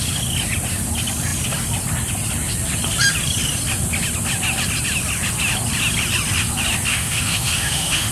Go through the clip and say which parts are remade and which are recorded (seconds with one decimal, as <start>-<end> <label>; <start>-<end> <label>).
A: 0.0-6.9 recorded; 6.9-8.1 remade